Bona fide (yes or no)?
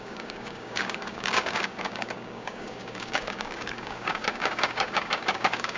no